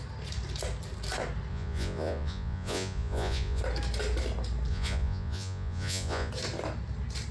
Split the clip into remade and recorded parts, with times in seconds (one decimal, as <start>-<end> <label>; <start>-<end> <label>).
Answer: 0.0-1.5 recorded; 1.5-3.6 remade; 3.6-4.7 recorded; 4.7-6.3 remade; 6.3-7.3 recorded